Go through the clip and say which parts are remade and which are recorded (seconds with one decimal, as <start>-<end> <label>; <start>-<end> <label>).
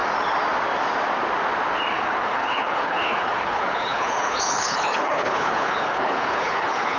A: 0.0-1.9 recorded; 1.9-7.0 remade